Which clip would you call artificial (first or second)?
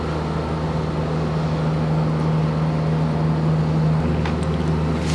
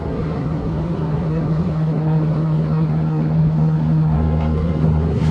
second